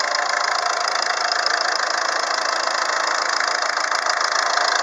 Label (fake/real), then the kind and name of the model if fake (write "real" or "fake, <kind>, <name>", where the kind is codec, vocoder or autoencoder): real